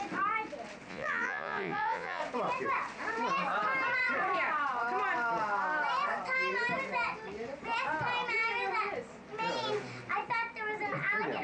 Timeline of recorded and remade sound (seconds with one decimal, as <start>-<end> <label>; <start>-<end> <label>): 0.0-0.9 recorded; 0.9-2.2 remade; 2.2-11.4 recorded